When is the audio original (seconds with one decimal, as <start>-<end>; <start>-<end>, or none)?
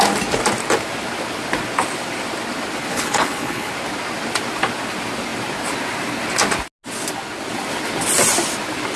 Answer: 0.0-2.9; 3.7-9.0